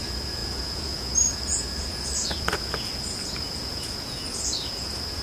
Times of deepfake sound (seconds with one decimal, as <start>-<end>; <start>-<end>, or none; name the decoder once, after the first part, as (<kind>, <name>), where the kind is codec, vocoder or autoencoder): 0.0-5.2 (vocoder, Vocos)